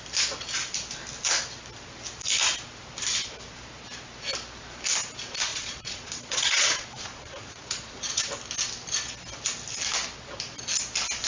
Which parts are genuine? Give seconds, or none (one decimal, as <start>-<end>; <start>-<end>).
0.0-5.5; 8.2-11.3